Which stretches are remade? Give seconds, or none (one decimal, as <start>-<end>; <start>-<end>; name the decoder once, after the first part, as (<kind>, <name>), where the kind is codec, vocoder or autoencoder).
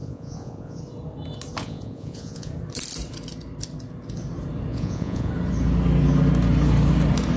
0.0-0.8 (vocoder, Vocos); 1.6-2.5; 4.7-5.3